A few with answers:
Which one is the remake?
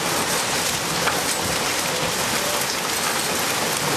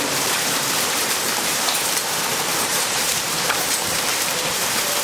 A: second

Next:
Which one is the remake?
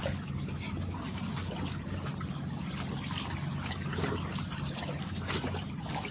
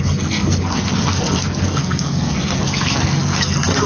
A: second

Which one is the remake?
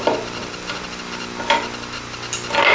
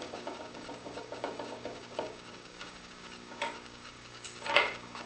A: second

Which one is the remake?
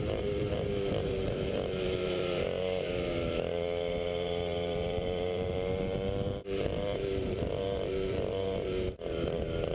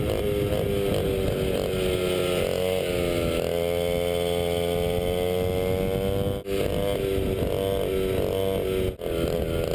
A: first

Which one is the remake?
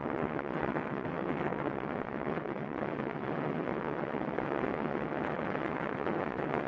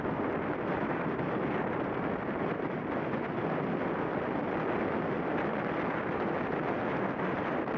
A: first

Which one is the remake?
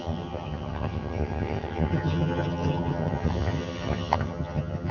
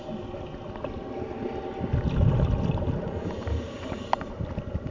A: first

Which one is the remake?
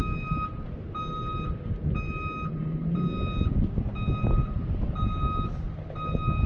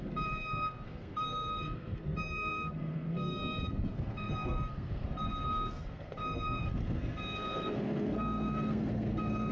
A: second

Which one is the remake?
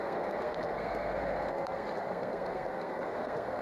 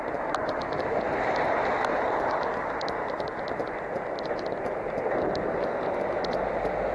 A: first